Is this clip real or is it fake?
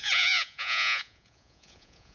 fake